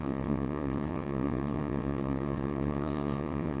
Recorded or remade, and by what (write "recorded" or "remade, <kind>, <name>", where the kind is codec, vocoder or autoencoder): remade, vocoder, WaveNeXt